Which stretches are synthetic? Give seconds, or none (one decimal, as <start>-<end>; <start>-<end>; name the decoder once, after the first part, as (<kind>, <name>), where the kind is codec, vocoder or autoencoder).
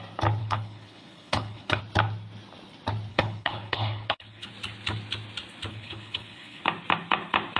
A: 0.4-1.8 (codec, HILCodec); 3.1-4.5; 5.7-6.6